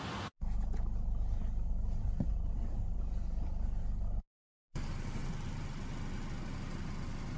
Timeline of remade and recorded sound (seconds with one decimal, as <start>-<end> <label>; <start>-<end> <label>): 0.0-7.4 recorded